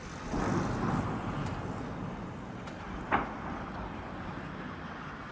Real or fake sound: real